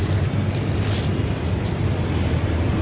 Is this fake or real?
real